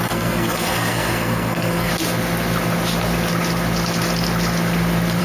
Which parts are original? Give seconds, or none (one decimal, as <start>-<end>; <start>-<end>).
1.9-5.2